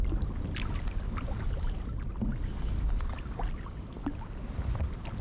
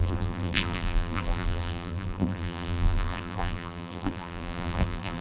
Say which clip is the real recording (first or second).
first